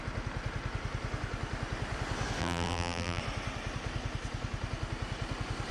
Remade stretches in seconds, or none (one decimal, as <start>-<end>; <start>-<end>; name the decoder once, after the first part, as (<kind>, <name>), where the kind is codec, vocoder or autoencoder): 2.4-3.2 (vocoder, BigVGAN v2)